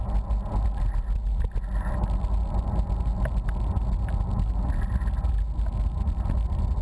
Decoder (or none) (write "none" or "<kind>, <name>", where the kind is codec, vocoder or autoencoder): none